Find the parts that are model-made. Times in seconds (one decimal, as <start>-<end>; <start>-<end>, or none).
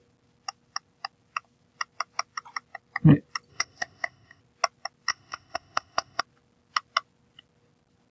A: 3.5-4.4; 5.1-6.2